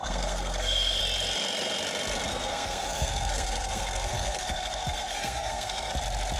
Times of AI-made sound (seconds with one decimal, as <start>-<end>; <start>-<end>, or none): 0.0-1.0; 2.3-5.9